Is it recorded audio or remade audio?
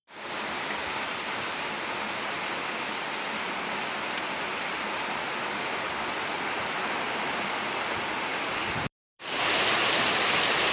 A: recorded